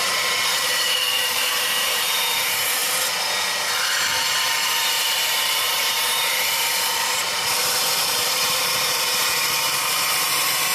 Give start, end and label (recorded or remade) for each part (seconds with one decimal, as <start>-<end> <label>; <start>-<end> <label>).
0.0-2.8 remade; 2.8-4.6 recorded; 4.6-10.7 remade